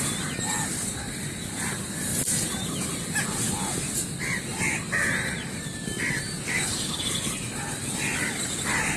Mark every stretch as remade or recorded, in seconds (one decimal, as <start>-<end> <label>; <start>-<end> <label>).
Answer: 0.0-9.0 recorded